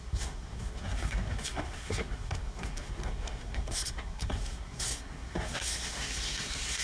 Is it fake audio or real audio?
fake